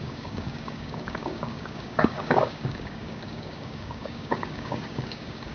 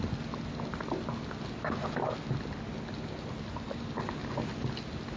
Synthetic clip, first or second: first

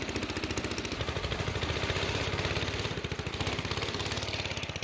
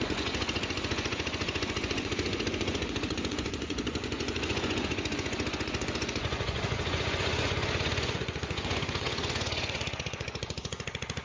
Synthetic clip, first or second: second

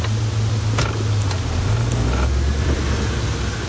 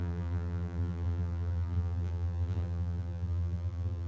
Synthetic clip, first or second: second